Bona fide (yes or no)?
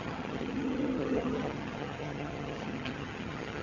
no